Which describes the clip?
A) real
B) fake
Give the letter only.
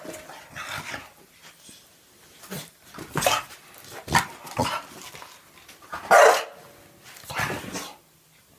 A